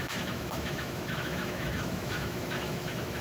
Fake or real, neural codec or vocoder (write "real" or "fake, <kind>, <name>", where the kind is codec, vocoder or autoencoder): fake, autoencoder, DAC-VAE